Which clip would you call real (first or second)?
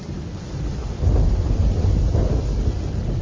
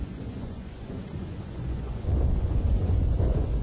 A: first